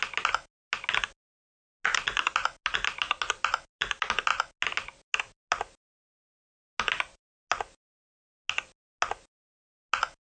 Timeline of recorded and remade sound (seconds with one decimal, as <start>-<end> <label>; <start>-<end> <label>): 0.0-10.3 recorded